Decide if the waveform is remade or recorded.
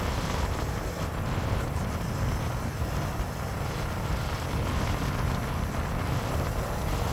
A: recorded